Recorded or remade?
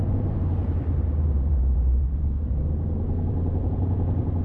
remade